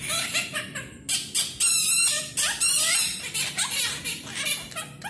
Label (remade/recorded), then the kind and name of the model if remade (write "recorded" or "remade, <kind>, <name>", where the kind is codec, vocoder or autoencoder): recorded